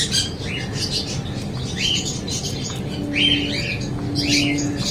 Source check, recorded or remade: recorded